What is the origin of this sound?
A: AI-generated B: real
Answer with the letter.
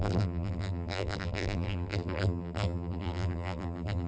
A